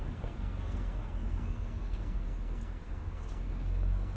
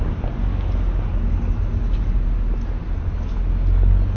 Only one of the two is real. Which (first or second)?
second